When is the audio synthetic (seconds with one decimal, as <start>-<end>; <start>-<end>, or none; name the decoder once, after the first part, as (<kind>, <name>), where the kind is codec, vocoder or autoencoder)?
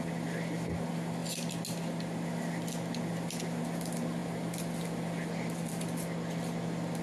none